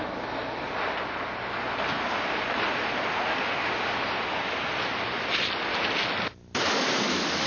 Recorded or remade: recorded